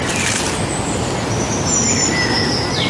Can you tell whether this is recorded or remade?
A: recorded